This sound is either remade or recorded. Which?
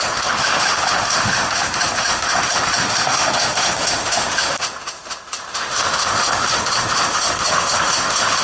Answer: remade